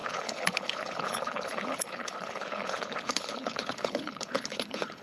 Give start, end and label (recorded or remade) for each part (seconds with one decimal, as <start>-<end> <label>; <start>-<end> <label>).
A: 0.0-5.0 remade

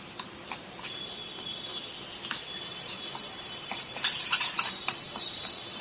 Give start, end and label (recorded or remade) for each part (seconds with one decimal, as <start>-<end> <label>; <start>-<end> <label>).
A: 0.0-1.7 remade; 1.7-3.5 recorded; 3.5-5.8 remade

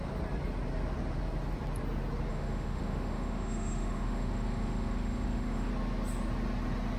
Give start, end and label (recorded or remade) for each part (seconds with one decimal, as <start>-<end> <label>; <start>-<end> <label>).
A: 0.0-2.3 recorded; 2.3-5.7 remade; 5.7-7.0 recorded

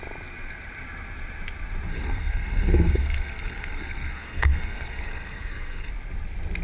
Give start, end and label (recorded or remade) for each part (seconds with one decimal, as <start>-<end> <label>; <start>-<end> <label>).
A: 0.0-1.9 recorded; 1.9-5.9 remade; 5.9-6.6 recorded